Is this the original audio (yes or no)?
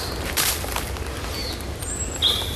yes